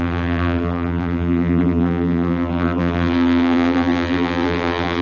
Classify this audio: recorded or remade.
remade